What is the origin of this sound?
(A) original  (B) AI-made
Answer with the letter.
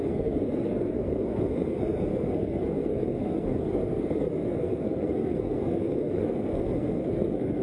B